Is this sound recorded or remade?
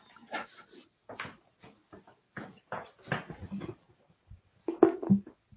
recorded